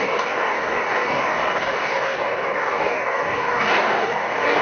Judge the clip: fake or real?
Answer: fake